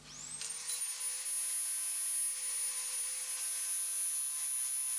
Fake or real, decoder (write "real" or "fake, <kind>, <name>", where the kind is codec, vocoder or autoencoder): real